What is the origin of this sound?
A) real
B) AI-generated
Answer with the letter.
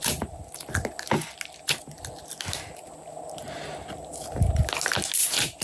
A